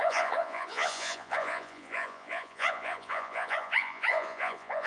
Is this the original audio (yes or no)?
no